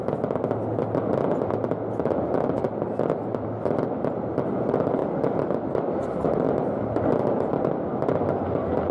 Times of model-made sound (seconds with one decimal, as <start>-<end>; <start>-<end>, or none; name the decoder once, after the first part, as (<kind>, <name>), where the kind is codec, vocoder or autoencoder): none